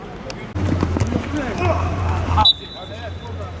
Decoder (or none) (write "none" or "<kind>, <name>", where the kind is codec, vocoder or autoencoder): none